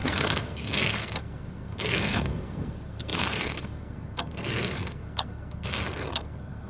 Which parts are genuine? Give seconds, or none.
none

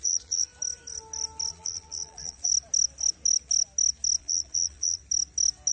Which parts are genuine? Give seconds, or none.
0.5-1.5; 2.5-4.2; 5.0-5.7

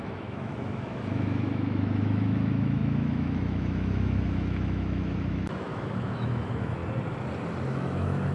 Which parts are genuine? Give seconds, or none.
6.8-7.7